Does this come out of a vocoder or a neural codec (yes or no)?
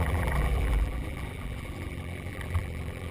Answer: yes